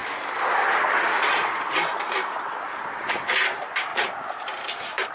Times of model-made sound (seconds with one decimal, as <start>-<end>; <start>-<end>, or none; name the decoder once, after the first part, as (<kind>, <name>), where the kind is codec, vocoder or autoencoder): 1.9-2.8 (vocoder, BigVGAN v2); 3.9-5.1